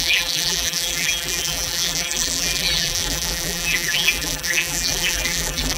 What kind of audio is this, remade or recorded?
remade